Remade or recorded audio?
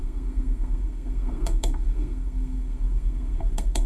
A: remade